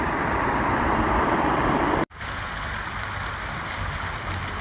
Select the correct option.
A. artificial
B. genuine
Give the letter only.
A